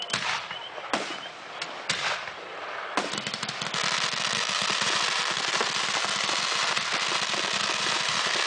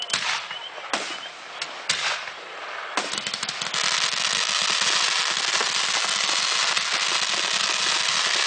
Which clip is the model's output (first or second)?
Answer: first